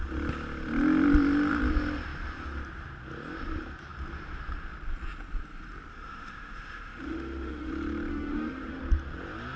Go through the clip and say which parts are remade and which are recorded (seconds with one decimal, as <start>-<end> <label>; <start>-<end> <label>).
0.0-5.9 recorded; 5.9-7.7 remade; 7.7-8.1 recorded; 8.1-8.8 remade; 8.8-9.6 recorded